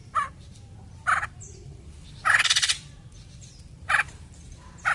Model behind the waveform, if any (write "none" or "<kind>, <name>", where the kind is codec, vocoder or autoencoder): vocoder, BigVGAN v2